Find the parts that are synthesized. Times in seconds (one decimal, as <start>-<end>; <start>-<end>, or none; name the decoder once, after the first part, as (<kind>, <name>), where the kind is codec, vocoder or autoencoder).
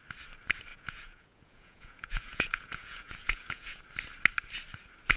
0.7-3.8 (vocoder, Vocos)